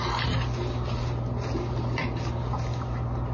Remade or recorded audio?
recorded